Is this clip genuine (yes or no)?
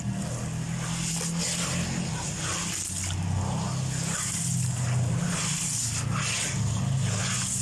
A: yes